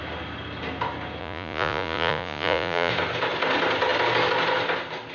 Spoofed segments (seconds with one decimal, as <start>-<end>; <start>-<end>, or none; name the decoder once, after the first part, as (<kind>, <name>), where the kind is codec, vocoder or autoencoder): 1.2-2.9 (vocoder, Vocos)